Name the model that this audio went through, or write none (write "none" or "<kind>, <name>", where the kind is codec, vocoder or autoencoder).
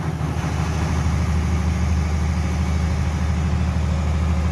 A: none